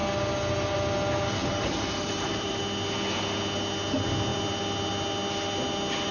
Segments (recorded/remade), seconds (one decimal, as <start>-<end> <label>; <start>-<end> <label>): 0.0-1.4 recorded; 1.4-2.6 remade; 2.6-6.1 recorded